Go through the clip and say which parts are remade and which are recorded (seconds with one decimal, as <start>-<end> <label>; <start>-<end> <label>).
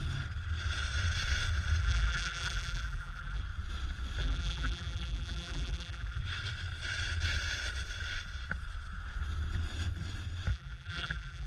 0.0-1.8 recorded; 1.8-3.4 remade; 3.4-4.2 recorded; 4.2-6.2 remade; 6.2-10.5 recorded; 10.5-11.5 remade